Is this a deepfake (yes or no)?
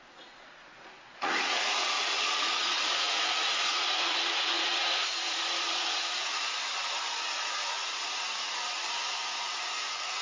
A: yes